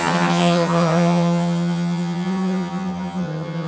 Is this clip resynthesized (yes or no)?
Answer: yes